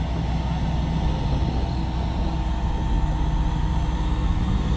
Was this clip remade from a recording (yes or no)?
no